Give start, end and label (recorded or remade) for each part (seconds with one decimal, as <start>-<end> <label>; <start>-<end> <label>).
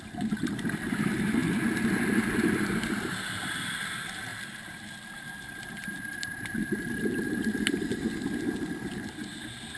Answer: 0.0-9.8 recorded